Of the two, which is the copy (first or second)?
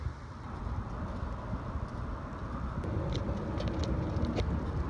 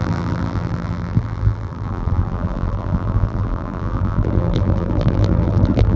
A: second